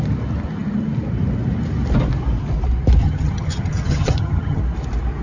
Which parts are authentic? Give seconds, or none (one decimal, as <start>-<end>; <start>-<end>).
0.0-3.0; 4.6-5.2